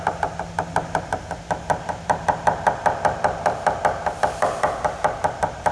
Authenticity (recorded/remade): recorded